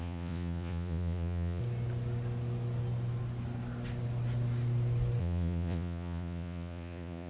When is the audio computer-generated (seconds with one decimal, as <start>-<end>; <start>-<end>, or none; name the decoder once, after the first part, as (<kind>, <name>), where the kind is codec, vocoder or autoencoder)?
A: 0.0-1.6 (vocoder, Vocos); 5.2-7.3